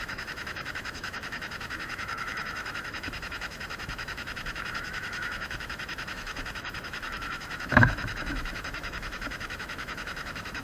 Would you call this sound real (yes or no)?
no